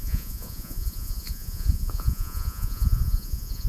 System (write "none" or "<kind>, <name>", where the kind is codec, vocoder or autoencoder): vocoder, Vocos